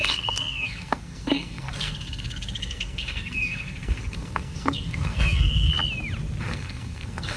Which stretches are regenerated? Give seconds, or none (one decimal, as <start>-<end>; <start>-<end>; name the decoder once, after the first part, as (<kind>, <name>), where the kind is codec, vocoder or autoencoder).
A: 0.0-5.7 (codec, SNAC); 6.4-7.4